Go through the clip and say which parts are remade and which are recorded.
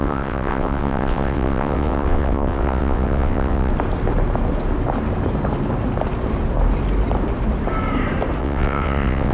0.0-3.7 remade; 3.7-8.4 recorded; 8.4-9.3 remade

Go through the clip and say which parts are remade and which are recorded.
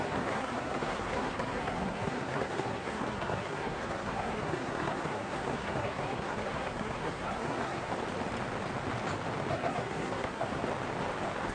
0.0-7.9 remade; 7.9-9.5 recorded; 9.5-10.6 remade; 10.6-11.5 recorded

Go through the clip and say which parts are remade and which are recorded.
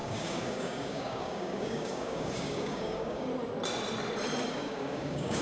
0.0-3.3 remade; 3.3-4.5 recorded; 4.5-5.4 remade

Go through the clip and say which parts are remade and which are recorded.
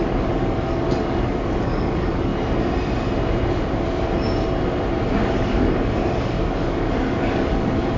0.0-2.3 remade; 2.3-5.1 recorded; 5.1-8.0 remade